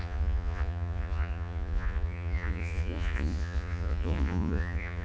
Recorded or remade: remade